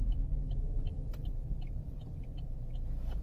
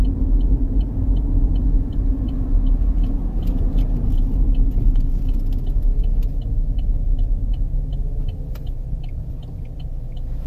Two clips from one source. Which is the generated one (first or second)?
first